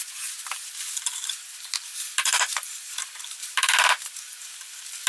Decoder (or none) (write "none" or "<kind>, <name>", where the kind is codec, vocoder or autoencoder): vocoder, BigVGAN v2